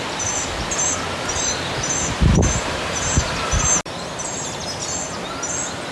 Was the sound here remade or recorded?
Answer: recorded